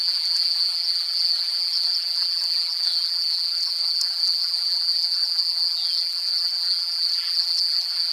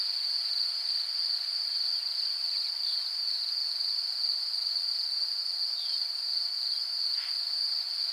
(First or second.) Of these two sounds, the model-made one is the first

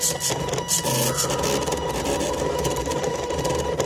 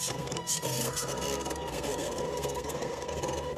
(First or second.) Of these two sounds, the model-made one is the second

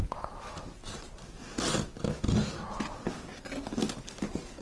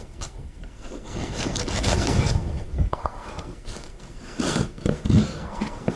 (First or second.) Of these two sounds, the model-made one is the second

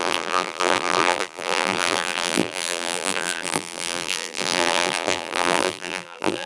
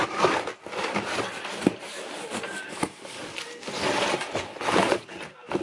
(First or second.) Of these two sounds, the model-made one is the first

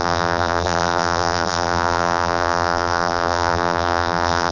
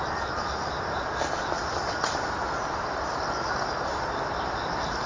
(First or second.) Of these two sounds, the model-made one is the first